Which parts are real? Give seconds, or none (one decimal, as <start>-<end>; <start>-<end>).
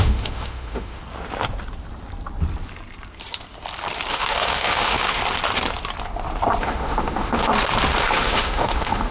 1.0-4.1; 5.2-6.6; 7.5-8.0